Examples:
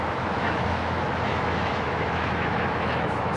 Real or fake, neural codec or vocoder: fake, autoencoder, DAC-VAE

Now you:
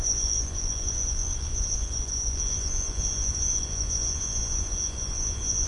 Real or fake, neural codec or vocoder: fake, vocoder, Vocos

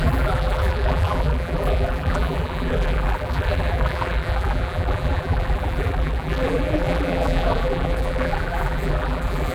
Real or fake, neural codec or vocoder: fake, vocoder, BigVGAN v2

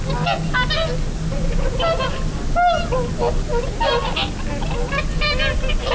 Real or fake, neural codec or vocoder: real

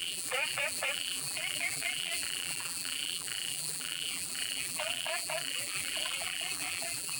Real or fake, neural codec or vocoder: fake, vocoder, BigVGAN v2